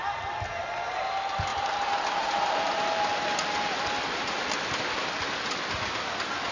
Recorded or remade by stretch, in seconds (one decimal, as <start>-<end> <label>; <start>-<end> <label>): 0.0-6.5 recorded